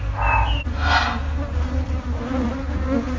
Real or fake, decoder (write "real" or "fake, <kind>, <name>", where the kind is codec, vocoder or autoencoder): real